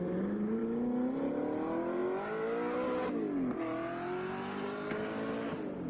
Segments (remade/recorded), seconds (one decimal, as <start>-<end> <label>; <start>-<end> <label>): 0.0-5.9 recorded